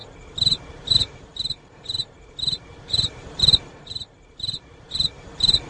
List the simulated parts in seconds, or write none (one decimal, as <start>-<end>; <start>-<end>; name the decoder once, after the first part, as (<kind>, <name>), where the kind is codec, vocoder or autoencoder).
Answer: 0.7-5.7 (vocoder, BigVGAN v2)